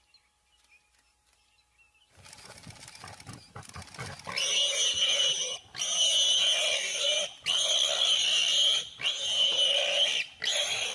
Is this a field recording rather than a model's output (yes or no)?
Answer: yes